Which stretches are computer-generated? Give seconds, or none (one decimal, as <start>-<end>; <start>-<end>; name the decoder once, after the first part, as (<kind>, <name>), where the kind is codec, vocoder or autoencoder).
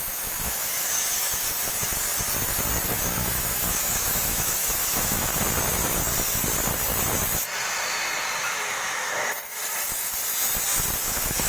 0.0-1.9 (autoencoder, DAC-VAE); 2.9-5.3; 8.4-9.6; 11.1-11.5